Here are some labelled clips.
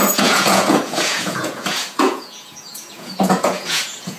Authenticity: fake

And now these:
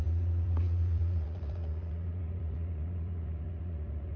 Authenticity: fake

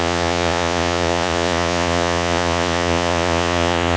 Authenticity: fake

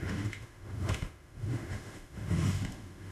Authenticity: fake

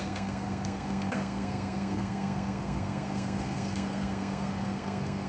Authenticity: fake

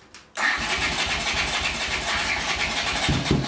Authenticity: real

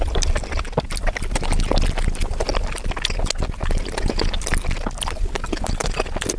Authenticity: real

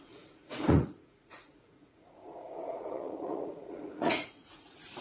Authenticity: fake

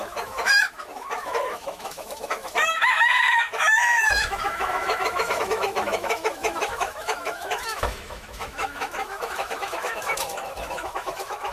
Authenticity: fake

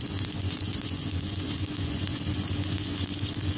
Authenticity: fake